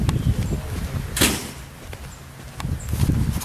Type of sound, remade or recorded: recorded